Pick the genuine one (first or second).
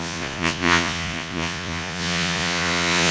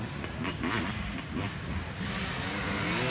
second